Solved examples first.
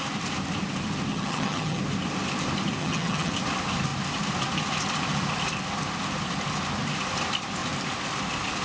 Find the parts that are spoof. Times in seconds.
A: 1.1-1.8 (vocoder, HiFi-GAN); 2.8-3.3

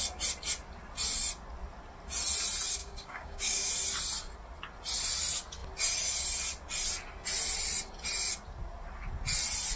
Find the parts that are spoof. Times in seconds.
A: 2.8-3.7 (codec, DAC)